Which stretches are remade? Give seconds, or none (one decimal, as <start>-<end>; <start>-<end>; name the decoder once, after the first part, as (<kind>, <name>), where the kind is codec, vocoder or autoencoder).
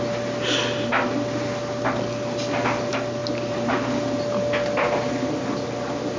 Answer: none